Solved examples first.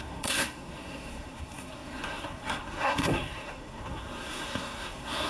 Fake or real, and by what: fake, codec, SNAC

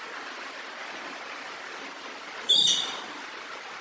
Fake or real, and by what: real